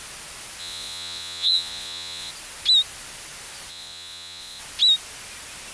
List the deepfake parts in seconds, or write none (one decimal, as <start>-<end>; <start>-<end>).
0.6-2.3; 3.7-4.6